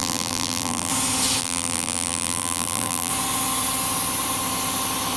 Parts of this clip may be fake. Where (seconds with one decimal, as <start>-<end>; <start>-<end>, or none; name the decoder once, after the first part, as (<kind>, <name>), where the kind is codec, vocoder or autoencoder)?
0.0-0.9 (vocoder, BigVGAN v2); 1.4-3.1